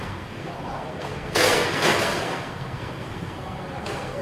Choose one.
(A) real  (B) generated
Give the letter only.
B